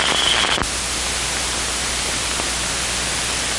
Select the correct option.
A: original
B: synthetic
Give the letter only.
A